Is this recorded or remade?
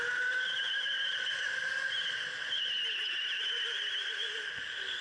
recorded